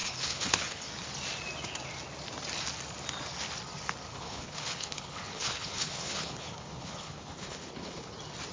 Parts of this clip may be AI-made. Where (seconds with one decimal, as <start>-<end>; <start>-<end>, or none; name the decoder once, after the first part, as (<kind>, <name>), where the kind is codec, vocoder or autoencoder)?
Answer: 0.0-0.9 (codec, HILCodec); 4.1-8.1